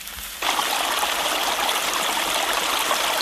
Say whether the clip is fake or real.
fake